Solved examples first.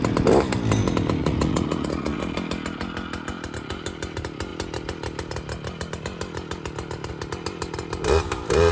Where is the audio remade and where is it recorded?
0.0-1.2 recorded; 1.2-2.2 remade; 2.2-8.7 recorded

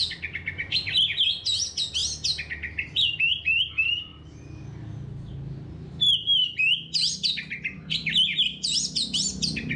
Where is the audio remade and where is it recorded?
0.0-9.8 recorded

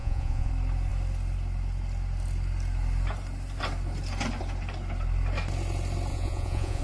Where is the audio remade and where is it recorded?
0.0-0.5 remade; 0.5-6.1 recorded; 6.1-6.8 remade

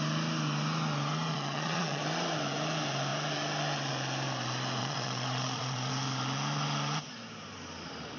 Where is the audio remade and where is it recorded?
0.0-1.3 recorded; 1.3-2.0 remade; 2.0-4.8 recorded; 4.8-5.9 remade; 5.9-8.2 recorded

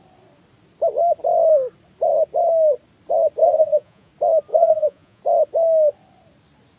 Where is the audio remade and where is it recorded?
0.0-3.4 recorded; 3.4-4.1 remade; 4.1-4.5 recorded; 4.5-5.2 remade; 5.2-6.8 recorded

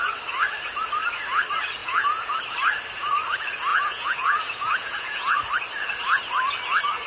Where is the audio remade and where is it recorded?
0.0-1.8 recorded; 1.8-2.4 remade; 2.4-3.7 recorded; 3.7-5.4 remade; 5.4-7.1 recorded

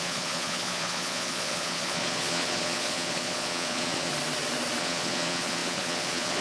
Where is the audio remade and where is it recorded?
0.0-4.1 remade; 4.1-4.8 recorded; 4.8-6.4 remade

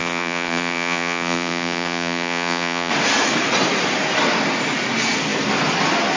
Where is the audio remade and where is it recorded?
0.0-2.9 remade; 2.9-6.2 recorded